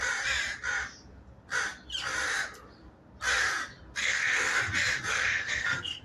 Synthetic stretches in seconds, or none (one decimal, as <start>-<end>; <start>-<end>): 4.0-4.6; 5.1-6.0